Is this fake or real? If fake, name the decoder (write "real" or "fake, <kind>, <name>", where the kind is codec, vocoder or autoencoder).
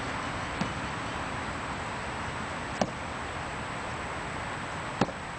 real